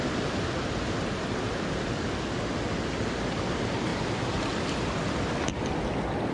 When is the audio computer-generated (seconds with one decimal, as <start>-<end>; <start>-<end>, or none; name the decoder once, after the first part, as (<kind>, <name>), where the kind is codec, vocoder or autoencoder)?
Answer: none

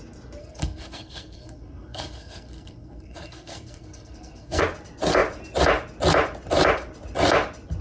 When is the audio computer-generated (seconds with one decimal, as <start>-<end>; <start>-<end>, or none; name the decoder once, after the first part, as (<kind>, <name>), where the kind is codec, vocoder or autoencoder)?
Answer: 0.4-4.6 (codec, SNAC)